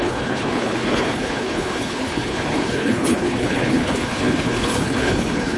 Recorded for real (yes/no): no